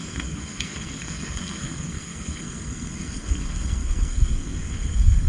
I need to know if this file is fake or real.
fake